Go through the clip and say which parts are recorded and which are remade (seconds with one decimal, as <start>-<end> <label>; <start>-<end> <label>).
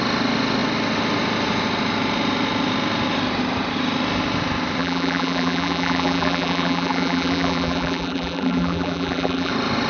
0.0-4.8 recorded; 4.8-9.5 remade; 9.5-9.9 recorded